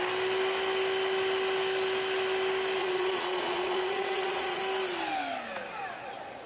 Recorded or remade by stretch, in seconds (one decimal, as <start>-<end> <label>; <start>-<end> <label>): 0.0-2.8 recorded; 2.8-4.6 remade; 4.6-6.5 recorded